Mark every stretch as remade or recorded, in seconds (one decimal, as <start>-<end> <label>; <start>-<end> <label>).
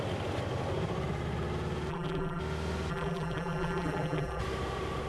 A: 0.0-1.9 recorded; 1.9-2.4 remade; 2.4-2.9 recorded; 2.9-4.4 remade; 4.4-5.1 recorded